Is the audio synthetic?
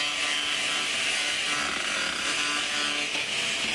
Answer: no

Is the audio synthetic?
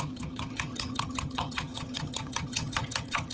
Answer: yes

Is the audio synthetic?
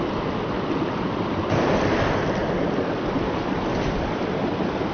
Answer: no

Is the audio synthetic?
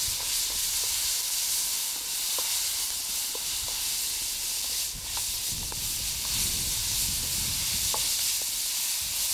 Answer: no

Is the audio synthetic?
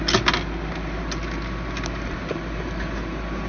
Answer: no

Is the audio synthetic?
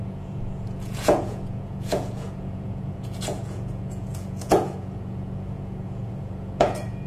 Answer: yes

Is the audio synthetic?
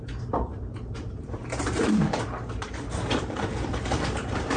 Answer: yes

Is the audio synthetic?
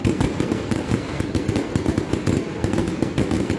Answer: yes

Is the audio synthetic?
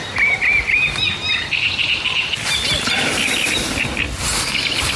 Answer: no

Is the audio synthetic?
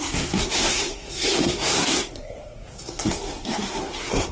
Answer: yes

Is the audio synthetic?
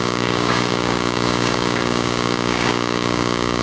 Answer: yes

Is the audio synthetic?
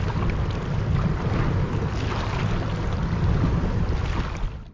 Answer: no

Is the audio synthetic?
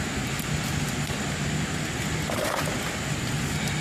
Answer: no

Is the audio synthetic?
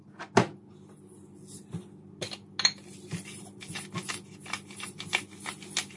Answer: no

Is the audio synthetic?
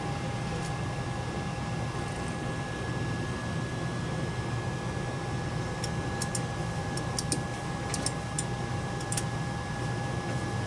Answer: no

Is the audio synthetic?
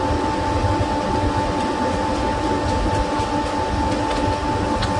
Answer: no